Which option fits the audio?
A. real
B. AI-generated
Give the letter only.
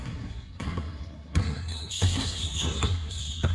B